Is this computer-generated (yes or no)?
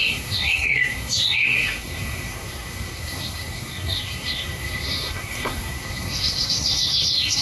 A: yes